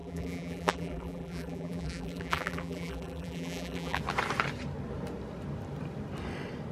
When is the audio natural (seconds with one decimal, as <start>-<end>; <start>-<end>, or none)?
4.0-6.7